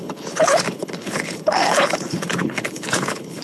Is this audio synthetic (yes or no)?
yes